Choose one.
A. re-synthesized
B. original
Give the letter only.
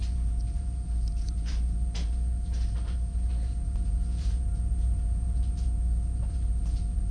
A